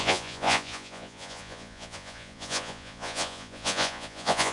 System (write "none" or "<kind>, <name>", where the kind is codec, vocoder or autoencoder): vocoder, Vocos